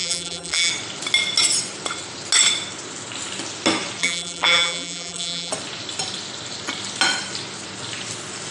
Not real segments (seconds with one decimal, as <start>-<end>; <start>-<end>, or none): 0.0-0.7; 4.0-5.5